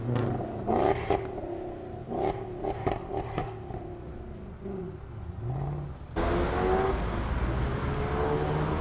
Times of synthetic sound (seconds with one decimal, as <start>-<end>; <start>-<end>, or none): none